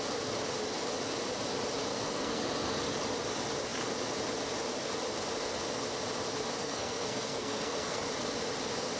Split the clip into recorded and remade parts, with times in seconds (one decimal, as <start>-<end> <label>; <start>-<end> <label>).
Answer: 0.0-1.9 recorded; 1.9-2.4 remade; 2.4-6.6 recorded; 6.6-8.0 remade; 8.0-9.0 recorded